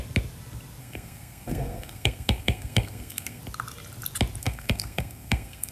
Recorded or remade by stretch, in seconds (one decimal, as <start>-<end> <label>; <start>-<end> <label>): 0.0-0.8 recorded; 0.8-3.4 remade; 3.4-4.4 recorded; 4.4-5.7 remade